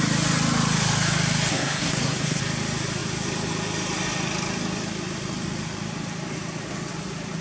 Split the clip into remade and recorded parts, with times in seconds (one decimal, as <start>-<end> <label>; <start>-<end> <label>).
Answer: 0.0-1.5 recorded; 1.5-2.4 remade; 2.4-7.4 recorded